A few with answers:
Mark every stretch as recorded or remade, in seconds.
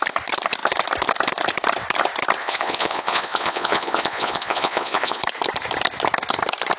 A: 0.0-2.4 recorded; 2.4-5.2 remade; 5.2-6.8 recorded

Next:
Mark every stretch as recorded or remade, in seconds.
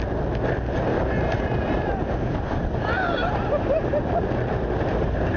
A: 0.0-0.9 recorded; 0.9-4.1 remade; 4.1-5.4 recorded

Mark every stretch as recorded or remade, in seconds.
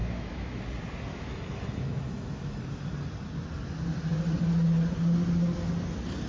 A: 0.0-0.6 remade; 0.6-1.1 recorded; 1.1-2.6 remade; 2.6-6.3 recorded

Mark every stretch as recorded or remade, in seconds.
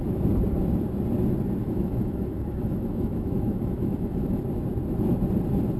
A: 0.0-1.6 recorded; 1.6-4.4 remade; 4.4-5.8 recorded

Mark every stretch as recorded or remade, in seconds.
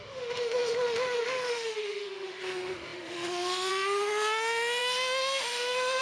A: 0.0-6.0 remade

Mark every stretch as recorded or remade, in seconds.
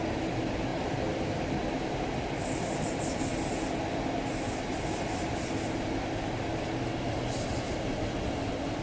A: 0.0-8.8 recorded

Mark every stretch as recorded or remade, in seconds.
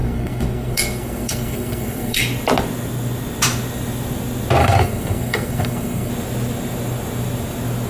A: 0.0-2.2 remade; 2.2-4.6 recorded; 4.6-6.1 remade; 6.1-7.9 recorded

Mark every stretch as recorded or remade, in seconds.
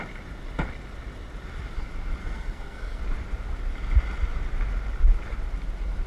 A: 0.0-2.2 recorded; 2.2-3.0 remade; 3.0-6.1 recorded